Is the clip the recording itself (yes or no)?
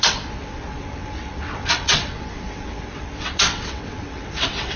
no